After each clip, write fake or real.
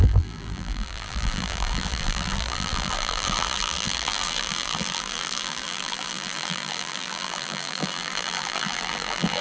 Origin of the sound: fake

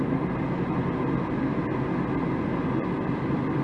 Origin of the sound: real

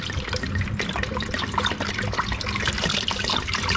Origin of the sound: real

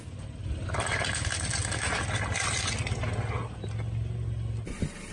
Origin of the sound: real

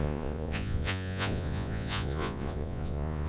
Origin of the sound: fake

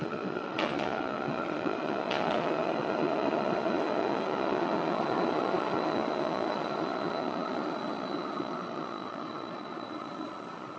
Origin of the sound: fake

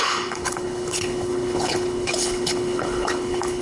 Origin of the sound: fake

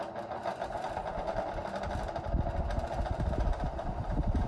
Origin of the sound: real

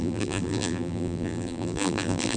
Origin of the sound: fake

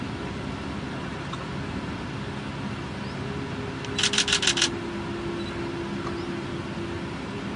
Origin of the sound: real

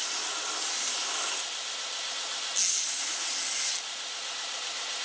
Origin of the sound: real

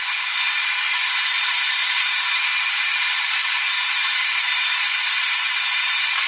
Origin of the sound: fake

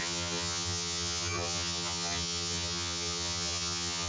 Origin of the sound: fake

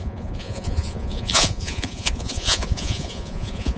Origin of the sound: fake